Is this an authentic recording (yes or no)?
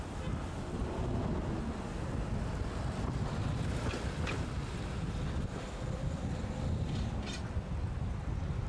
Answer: yes